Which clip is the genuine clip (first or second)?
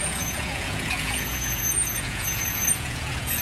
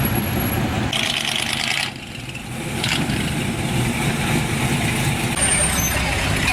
second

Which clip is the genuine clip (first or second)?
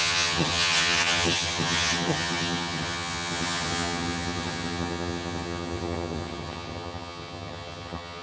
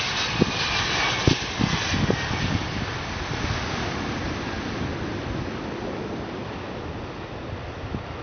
second